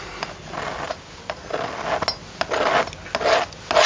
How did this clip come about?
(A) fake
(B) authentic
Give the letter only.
B